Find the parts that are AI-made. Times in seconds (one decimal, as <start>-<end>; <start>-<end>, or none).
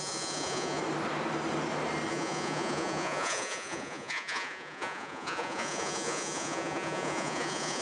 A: 0.0-0.8; 2.1-7.8